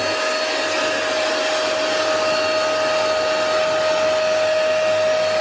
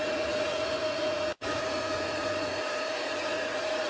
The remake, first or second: second